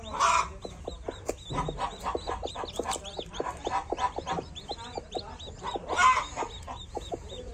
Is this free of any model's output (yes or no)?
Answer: yes